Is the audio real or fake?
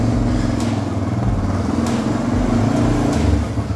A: real